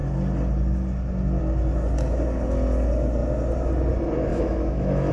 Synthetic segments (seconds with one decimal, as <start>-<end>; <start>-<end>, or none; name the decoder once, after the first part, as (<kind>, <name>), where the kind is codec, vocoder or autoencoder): 4.3-5.1 (autoencoder, DAC-VAE)